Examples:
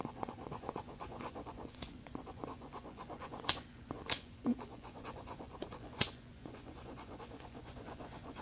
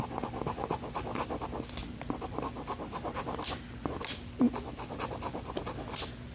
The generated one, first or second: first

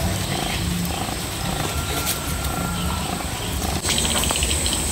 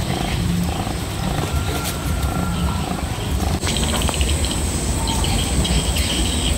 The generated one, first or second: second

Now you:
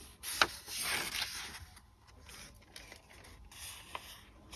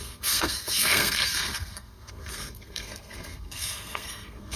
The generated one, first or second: second